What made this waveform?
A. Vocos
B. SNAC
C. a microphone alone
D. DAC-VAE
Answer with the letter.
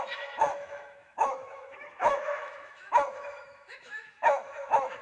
D